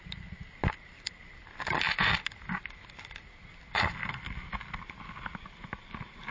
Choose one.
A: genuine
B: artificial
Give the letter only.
A